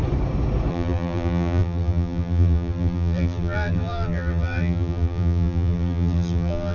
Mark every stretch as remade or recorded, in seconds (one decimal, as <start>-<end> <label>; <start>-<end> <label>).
0.0-0.7 recorded; 0.7-6.7 remade